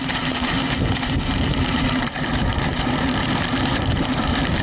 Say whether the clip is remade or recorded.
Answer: remade